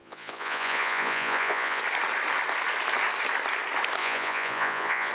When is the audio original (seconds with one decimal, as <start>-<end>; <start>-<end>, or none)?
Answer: 1.8-4.0